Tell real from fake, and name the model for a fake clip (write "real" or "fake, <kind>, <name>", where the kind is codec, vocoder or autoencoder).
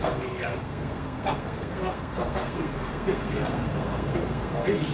fake, codec, SNAC